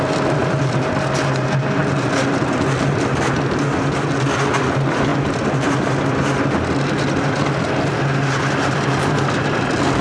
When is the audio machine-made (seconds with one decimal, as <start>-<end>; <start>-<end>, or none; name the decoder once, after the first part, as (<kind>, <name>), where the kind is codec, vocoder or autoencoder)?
0.4-0.9 (vocoder, BigVGAN v2); 5.1-6.1